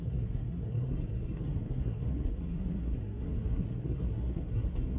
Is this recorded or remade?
remade